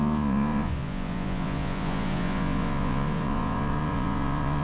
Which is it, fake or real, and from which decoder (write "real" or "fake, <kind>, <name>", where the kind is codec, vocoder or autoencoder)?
fake, vocoder, Vocos